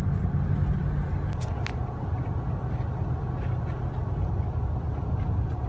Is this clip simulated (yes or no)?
no